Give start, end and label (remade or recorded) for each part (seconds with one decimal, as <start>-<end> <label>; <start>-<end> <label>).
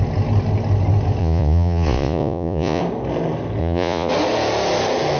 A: 0.0-1.2 recorded; 1.2-2.8 remade; 2.8-3.6 recorded; 3.6-4.1 remade; 4.1-5.2 recorded